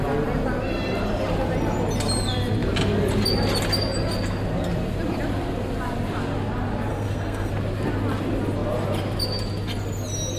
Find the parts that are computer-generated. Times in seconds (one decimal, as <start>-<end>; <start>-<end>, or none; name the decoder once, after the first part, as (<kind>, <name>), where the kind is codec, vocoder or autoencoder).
6.9-7.5 (codec, SNAC)